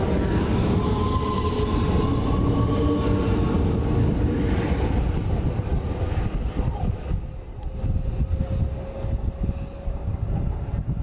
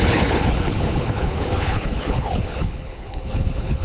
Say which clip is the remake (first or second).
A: second